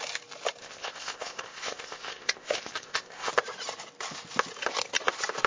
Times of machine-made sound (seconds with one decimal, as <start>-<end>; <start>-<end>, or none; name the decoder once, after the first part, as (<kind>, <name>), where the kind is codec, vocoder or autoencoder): 0.6-3.3 (codec, ZipCodec)

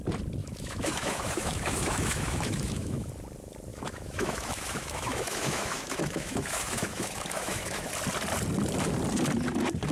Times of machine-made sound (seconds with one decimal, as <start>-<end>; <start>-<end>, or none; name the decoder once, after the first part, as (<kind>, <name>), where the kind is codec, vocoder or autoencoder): 0.4-3.1 (autoencoder, DAC-VAE); 3.7-7.9